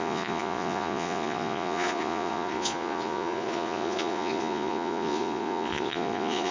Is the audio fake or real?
fake